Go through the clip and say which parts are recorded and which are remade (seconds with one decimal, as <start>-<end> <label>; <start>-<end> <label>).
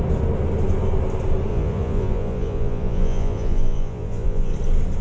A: 0.0-1.5 recorded; 1.5-4.5 remade; 4.5-5.0 recorded